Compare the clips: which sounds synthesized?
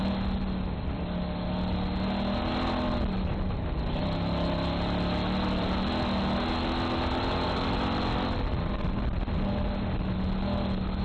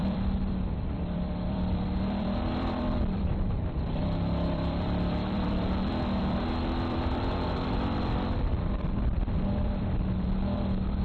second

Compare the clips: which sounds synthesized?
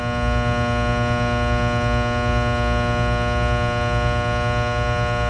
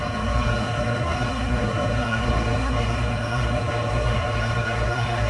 second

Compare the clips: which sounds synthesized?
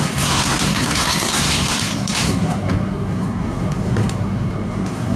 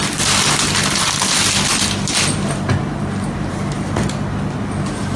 first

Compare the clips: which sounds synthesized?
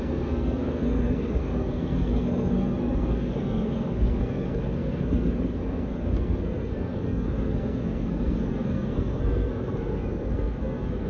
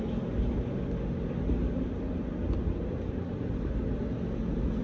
first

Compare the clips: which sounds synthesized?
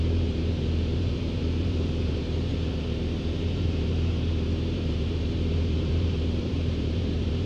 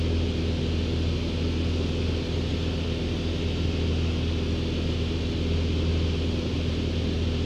first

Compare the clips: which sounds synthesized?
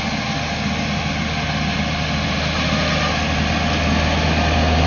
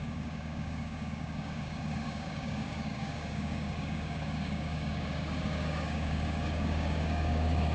second